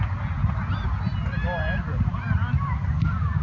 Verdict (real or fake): real